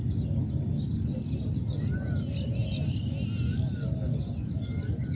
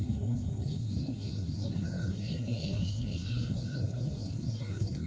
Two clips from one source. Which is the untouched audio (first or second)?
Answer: first